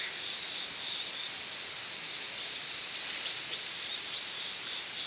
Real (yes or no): no